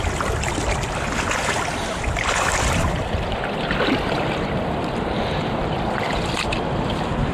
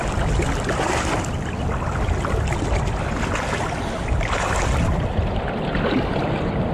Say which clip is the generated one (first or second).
first